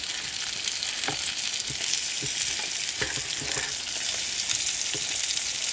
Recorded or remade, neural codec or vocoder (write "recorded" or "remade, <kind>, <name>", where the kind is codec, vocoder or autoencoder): recorded